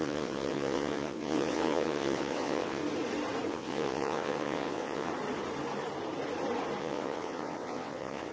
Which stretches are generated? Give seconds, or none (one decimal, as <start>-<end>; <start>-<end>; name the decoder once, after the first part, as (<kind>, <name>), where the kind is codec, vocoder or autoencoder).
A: 0.0-2.8 (vocoder, WaveNeXt); 3.5-5.1; 6.8-8.3